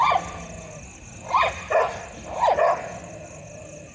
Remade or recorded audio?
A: recorded